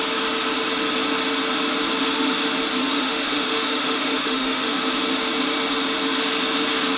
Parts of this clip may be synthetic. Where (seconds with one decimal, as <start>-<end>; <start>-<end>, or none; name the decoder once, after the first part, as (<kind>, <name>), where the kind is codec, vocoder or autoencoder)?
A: 2.8-4.7 (autoencoder, DAC-VAE)